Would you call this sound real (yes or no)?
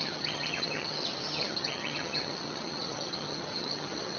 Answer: no